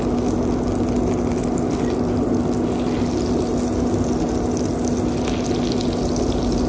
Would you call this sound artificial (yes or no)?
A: no